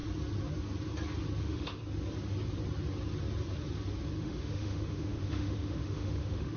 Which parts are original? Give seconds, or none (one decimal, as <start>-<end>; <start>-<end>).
0.0-1.4; 1.8-4.2